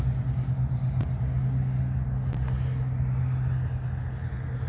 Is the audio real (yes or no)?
yes